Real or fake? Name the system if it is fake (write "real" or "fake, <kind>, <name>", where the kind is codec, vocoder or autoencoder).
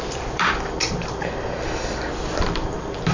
fake, vocoder, BigVGAN v2